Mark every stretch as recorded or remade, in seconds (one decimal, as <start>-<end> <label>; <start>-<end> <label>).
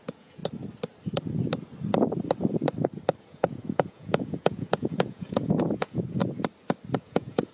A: 0.0-0.4 remade; 0.4-3.2 recorded; 3.2-6.2 remade; 6.2-7.0 recorded; 7.0-7.5 remade